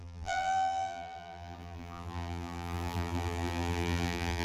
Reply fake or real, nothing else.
fake